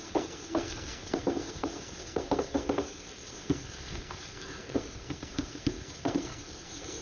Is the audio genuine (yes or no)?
no